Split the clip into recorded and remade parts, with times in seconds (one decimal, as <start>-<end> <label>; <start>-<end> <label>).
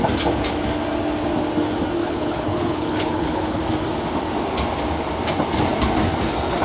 0.0-2.0 recorded; 2.0-3.6 remade; 3.6-6.6 recorded